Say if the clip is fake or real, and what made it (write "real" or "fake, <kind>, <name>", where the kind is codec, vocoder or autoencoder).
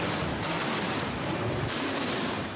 fake, vocoder, BigVGAN v2